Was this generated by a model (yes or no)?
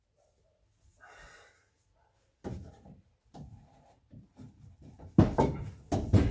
no